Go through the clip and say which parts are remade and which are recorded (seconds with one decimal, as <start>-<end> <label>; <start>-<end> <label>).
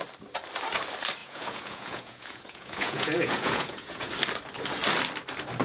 0.0-1.2 recorded; 1.2-4.1 remade; 4.1-5.6 recorded